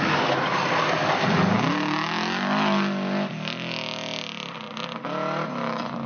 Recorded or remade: recorded